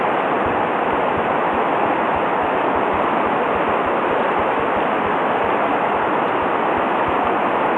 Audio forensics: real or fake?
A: real